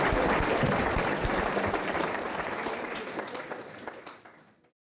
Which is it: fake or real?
real